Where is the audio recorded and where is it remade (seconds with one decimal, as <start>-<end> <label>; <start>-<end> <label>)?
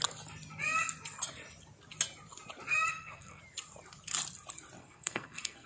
0.0-2.9 recorded; 2.9-3.4 remade; 3.4-4.8 recorded; 4.8-5.7 remade